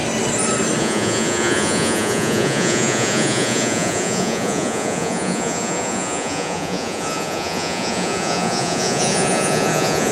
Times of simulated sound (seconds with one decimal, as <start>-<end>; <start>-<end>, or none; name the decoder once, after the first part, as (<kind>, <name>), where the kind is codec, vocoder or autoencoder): 0.8-10.1 (vocoder, Vocos)